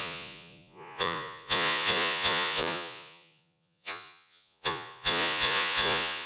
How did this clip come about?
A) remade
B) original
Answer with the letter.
A